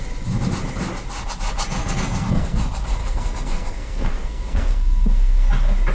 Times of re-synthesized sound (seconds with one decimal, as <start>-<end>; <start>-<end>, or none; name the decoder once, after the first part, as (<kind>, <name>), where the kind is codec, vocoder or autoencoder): 1.8-2.6 (codec, SNAC); 3.0-5.5